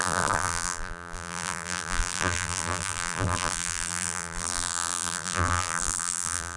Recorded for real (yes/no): no